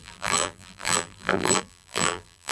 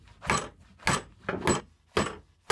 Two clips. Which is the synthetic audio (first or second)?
first